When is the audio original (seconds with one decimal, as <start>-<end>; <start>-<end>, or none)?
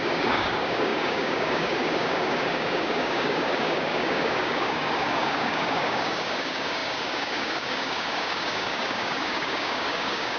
none